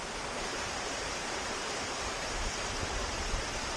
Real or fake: fake